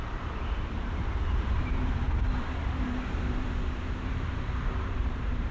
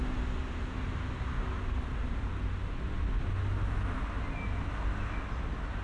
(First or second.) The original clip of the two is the second